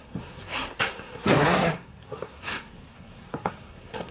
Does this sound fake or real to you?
fake